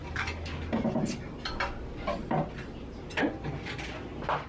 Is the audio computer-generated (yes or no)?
no